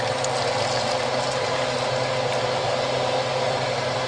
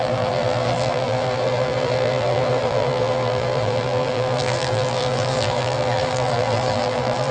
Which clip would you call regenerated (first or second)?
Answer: second